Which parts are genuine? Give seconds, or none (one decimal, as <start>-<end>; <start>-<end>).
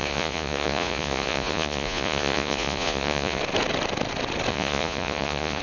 3.4-4.5